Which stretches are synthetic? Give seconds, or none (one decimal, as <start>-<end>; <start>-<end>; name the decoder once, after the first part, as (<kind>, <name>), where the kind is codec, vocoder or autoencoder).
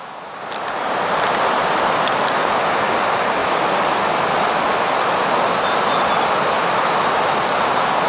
none